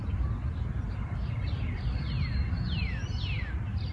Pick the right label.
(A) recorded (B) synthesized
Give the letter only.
A